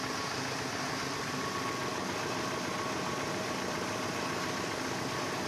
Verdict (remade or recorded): recorded